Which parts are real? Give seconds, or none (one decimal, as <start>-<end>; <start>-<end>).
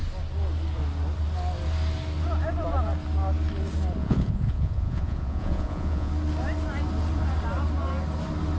0.0-4.0; 6.1-8.6